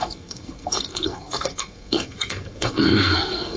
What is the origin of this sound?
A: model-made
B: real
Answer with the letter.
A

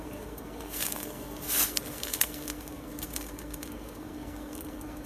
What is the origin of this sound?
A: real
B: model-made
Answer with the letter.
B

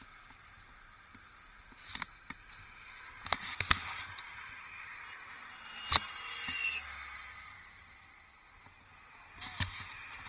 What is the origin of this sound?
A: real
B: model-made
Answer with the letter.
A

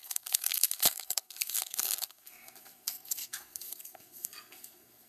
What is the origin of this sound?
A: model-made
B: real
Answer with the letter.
A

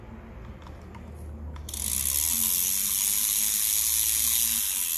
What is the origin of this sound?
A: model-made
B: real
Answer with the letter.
B